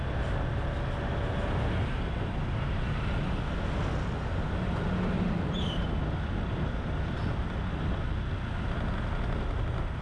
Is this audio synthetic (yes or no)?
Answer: no